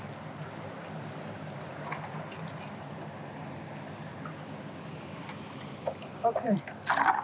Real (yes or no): yes